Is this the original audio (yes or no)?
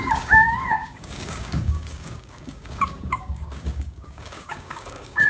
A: no